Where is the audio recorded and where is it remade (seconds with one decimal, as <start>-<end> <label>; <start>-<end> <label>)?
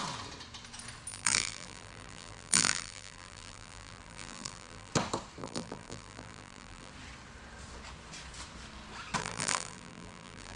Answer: 0.0-1.1 recorded; 1.1-4.9 remade; 4.9-5.4 recorded; 5.4-6.9 remade; 6.9-9.2 recorded; 9.2-10.6 remade